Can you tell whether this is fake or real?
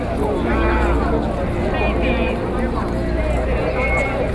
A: real